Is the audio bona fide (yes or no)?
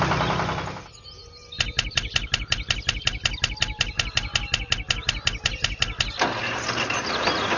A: yes